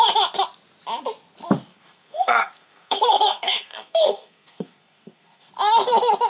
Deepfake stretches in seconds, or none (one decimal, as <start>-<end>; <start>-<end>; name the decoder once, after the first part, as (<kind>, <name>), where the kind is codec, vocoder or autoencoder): 1.7-5.5 (codec, SNAC)